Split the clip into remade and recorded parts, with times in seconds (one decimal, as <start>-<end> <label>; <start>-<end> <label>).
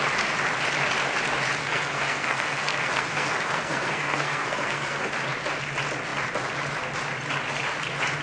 0.0-1.6 recorded; 1.6-5.1 remade; 5.1-8.2 recorded